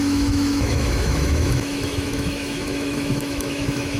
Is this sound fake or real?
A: fake